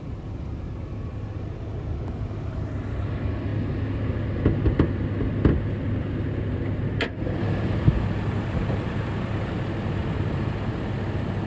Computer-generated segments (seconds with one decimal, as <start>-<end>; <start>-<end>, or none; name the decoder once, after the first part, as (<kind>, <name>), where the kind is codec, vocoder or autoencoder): none

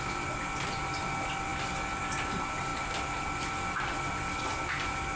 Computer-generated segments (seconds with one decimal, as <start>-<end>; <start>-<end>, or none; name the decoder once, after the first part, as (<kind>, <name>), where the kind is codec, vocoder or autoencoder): none

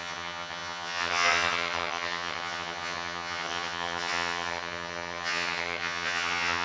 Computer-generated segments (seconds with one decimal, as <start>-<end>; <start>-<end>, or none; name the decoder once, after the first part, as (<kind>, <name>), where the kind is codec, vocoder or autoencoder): 0.0-6.6 (vocoder, HiFi-GAN)

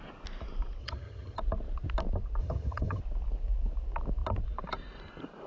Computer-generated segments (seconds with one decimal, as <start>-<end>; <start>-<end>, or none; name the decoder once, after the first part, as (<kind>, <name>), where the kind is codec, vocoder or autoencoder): 0.8-1.4 (vocoder, HiFi-GAN); 2.4-3.0

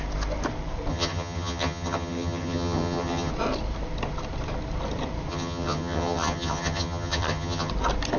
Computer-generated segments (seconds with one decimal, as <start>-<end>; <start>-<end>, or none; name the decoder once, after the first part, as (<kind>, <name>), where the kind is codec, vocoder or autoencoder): 0.9-3.3 (vocoder, HiFi-GAN); 5.3-7.7

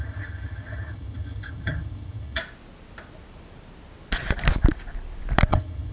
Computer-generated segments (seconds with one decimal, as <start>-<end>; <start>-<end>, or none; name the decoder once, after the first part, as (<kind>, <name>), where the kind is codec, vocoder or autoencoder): 0.0-2.4 (vocoder, HiFi-GAN); 5.5-5.9

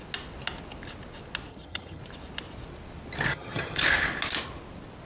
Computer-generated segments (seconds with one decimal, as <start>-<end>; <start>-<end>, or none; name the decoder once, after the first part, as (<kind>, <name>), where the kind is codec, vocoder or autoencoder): 1.5-2.0 (vocoder, HiFi-GAN); 3.3-3.8

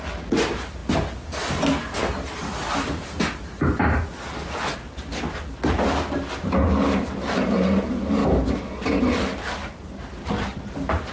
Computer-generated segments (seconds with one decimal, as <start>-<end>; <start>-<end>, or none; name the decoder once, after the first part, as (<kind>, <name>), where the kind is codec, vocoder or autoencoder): 10.2-10.7 (vocoder, HiFi-GAN)